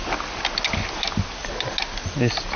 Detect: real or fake real